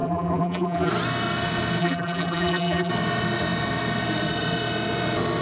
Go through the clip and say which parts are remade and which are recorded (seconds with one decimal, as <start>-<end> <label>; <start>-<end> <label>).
0.0-0.9 remade; 0.9-1.8 recorded; 1.8-2.9 remade; 2.9-5.4 recorded